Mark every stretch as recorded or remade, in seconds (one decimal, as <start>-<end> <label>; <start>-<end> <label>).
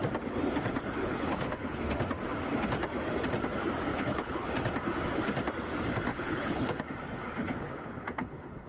0.0-1.0 recorded; 1.0-1.9 remade; 1.9-3.9 recorded; 3.9-4.5 remade; 4.5-6.1 recorded; 6.1-6.8 remade; 6.8-7.4 recorded; 7.4-8.7 remade